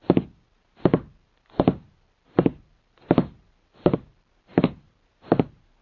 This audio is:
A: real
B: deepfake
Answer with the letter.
A